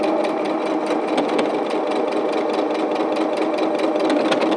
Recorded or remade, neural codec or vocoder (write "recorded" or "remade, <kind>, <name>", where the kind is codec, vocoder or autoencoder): recorded